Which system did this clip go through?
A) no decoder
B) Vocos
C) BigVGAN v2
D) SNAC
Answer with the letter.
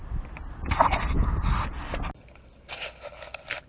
A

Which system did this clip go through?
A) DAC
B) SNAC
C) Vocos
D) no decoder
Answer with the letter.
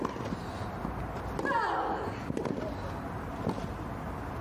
D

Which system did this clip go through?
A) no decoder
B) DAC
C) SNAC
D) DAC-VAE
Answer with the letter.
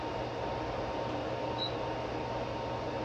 A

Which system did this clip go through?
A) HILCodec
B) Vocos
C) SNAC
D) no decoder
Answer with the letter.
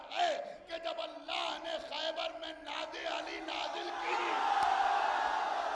D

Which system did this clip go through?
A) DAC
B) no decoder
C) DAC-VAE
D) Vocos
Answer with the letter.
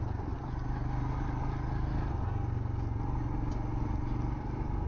B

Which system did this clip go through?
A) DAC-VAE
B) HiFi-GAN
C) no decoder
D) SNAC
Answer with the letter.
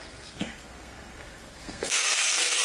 D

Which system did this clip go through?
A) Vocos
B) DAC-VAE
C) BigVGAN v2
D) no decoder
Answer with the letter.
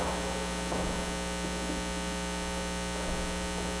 D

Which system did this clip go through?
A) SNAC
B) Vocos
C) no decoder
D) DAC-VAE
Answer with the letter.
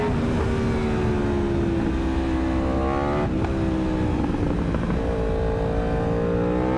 C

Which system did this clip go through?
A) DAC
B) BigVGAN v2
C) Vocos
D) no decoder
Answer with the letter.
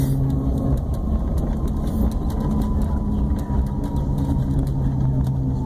D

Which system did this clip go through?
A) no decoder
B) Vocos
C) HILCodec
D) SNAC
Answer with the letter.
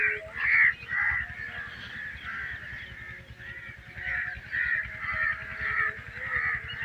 A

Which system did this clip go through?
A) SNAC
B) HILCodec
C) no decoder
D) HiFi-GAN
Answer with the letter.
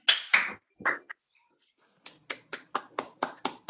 C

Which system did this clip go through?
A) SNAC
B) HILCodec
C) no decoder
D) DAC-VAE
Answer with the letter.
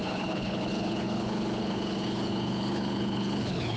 B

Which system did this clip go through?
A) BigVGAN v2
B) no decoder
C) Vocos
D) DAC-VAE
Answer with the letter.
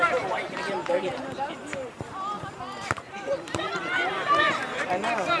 A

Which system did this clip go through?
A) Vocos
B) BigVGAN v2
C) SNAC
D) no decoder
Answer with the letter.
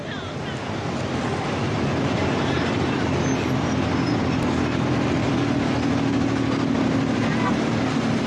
D